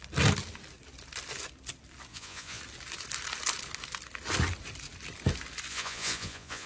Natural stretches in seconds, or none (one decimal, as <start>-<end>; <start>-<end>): 0.0-2.1; 2.6-5.7